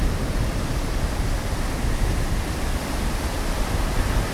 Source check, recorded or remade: recorded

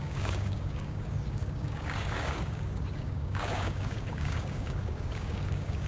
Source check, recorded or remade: remade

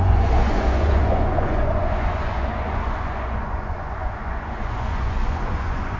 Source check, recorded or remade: remade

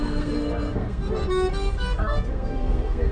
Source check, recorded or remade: remade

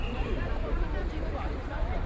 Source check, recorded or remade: recorded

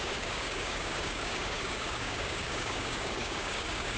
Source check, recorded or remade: remade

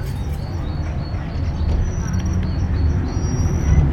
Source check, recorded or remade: recorded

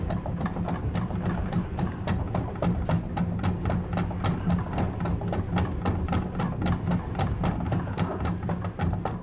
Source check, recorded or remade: recorded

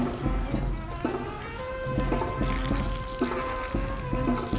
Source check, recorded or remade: recorded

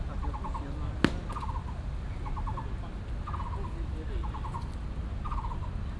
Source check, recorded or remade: recorded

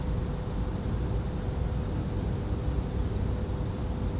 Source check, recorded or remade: recorded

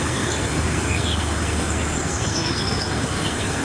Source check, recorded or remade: remade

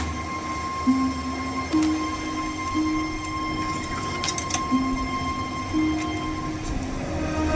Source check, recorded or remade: recorded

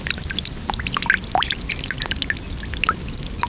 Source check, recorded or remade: recorded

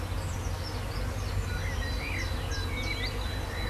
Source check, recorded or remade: recorded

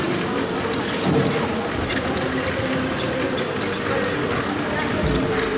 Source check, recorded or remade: recorded